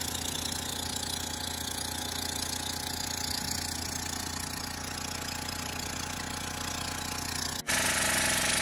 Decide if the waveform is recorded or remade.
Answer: recorded